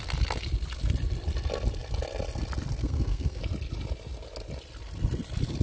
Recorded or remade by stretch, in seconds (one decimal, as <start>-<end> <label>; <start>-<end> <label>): 0.0-2.8 recorded; 2.8-3.4 remade; 3.4-5.6 recorded